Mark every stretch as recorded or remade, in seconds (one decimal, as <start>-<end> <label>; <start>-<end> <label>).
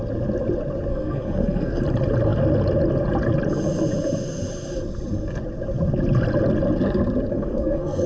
0.0-0.9 recorded; 0.9-1.8 remade; 1.8-7.3 recorded; 7.3-8.1 remade